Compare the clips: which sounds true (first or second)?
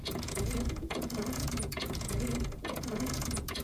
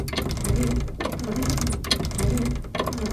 second